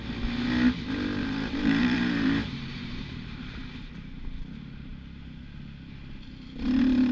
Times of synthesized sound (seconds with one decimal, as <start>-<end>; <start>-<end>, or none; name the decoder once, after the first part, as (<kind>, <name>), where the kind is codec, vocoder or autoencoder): 1.2-3.6 (vocoder, BigVGAN v2)